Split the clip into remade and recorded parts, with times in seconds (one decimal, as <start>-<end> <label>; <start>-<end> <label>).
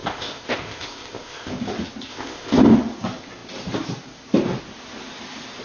0.0-1.6 remade; 1.6-2.1 recorded; 2.1-2.6 remade; 2.6-5.6 recorded